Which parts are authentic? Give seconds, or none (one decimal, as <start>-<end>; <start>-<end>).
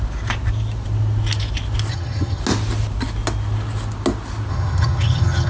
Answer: 0.0-1.9; 2.4-4.5